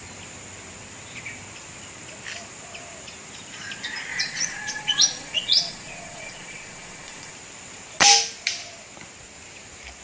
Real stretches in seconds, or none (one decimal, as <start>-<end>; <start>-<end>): 0.0-4.1; 7.3-10.0